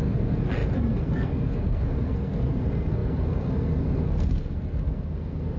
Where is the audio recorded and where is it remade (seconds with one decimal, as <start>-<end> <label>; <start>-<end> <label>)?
0.0-5.6 remade